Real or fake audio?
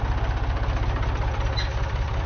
real